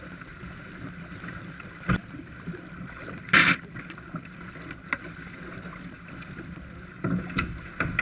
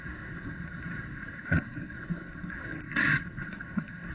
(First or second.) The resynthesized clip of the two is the second